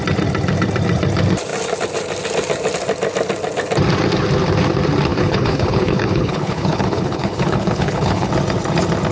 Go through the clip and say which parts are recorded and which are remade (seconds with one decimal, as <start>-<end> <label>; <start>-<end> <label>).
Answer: 0.0-5.1 recorded; 5.1-8.3 remade; 8.3-9.1 recorded